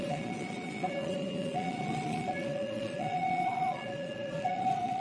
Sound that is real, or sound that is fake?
fake